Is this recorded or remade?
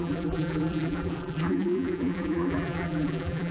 remade